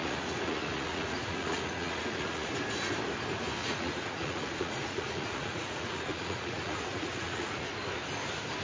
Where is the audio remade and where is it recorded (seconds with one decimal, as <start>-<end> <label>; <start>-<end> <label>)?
0.0-2.5 remade; 2.5-3.6 recorded; 3.6-7.8 remade; 7.8-8.6 recorded